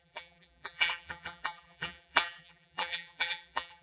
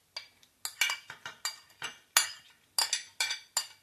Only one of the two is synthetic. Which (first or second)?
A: first